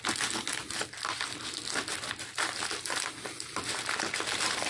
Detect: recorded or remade recorded